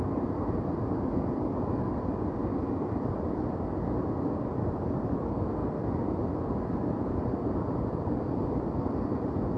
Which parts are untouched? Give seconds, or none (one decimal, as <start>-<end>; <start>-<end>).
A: 2.4-3.1; 5.6-6.6